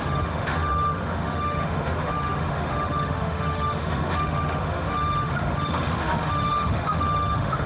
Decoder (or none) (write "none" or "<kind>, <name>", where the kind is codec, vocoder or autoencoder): autoencoder, DAC-VAE